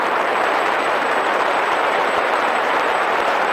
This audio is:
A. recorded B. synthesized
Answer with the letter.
B